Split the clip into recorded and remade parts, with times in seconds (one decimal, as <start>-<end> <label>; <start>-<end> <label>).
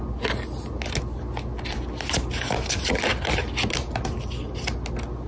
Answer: 0.0-5.3 recorded